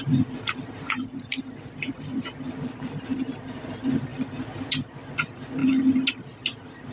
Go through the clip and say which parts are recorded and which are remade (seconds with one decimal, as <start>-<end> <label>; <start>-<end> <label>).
0.0-6.9 recorded